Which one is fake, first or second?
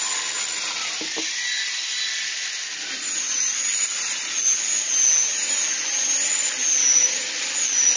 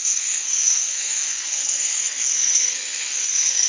second